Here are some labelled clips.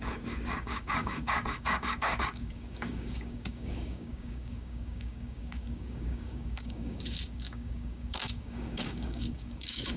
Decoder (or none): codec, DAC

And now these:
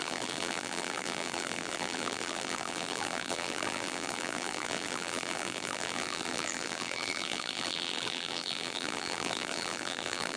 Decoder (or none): vocoder, BigVGAN v2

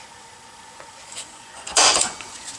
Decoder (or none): vocoder, Vocos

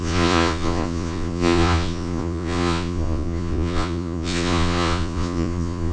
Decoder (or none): vocoder, Vocos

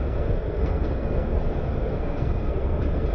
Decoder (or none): codec, SNAC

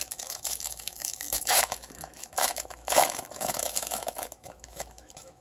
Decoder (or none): autoencoder, DAC-VAE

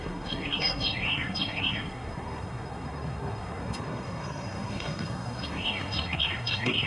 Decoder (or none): codec, SNAC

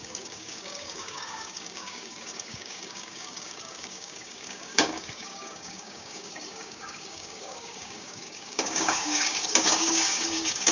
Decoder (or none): codec, DAC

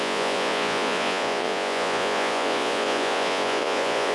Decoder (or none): vocoder, Vocos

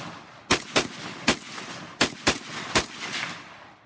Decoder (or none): none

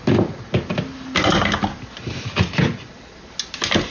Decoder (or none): none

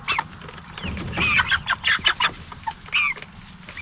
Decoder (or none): none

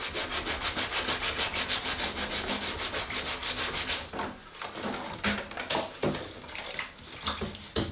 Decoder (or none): none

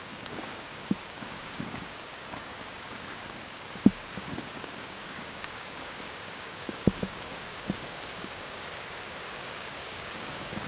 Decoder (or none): codec, DAC